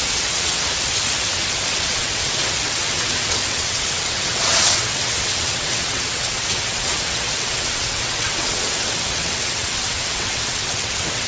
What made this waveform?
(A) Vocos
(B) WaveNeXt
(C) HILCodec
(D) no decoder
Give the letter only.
B